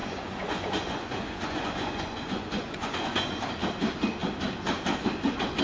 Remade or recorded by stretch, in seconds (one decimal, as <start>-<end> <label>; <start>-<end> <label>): 0.0-3.4 remade; 3.4-5.6 recorded